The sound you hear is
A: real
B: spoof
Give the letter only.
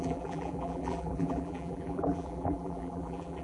B